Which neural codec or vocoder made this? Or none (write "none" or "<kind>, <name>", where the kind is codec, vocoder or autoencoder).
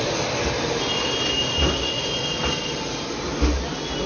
none